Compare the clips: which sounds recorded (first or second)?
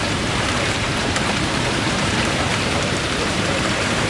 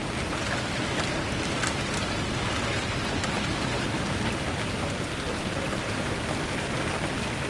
second